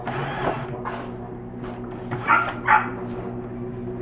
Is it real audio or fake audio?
real